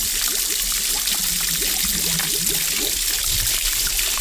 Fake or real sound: real